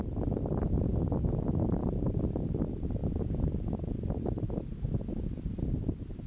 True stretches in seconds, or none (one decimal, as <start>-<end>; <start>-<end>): 0.0-1.8; 2.6-6.3